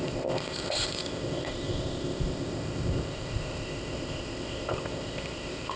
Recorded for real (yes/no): no